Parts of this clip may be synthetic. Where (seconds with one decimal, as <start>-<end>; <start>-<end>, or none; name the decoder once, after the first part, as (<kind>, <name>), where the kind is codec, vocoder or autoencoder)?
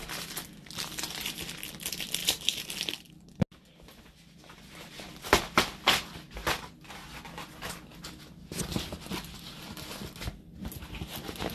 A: 2.2-3.1 (vocoder, BigVGAN v2)